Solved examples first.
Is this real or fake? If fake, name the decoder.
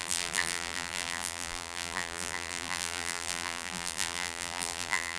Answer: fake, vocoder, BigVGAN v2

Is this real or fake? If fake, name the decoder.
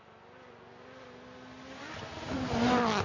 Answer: real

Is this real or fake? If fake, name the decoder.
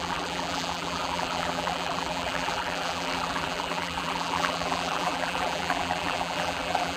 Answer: fake, vocoder, BigVGAN v2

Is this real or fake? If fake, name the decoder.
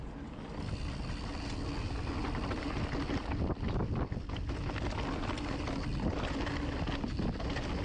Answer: real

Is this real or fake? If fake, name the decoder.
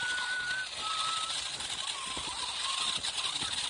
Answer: real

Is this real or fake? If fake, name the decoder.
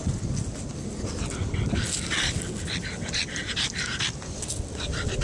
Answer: real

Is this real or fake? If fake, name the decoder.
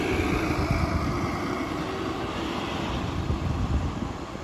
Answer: fake, vocoder, BigVGAN v2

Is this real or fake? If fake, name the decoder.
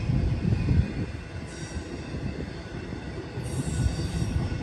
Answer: fake, vocoder, BigVGAN v2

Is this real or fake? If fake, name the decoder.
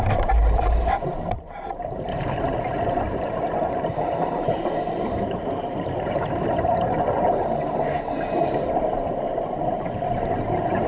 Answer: fake, vocoder, BigVGAN v2